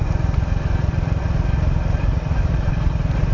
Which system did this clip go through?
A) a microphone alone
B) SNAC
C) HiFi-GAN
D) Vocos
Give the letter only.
A